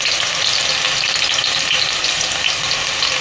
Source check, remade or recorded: recorded